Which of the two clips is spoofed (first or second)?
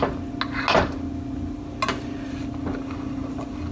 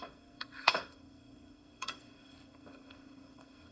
second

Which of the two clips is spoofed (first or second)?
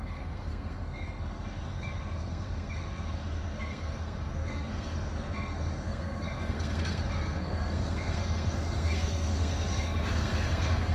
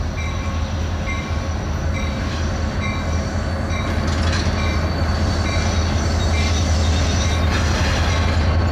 first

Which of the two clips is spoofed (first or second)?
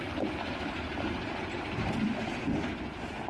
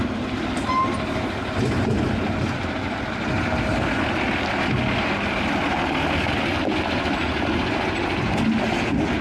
first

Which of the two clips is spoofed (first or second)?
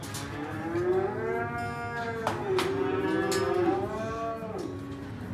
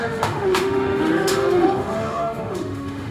second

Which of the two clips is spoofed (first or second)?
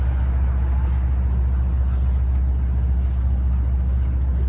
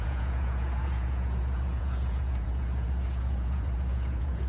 second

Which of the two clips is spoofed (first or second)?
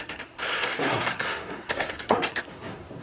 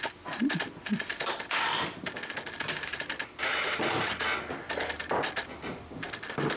first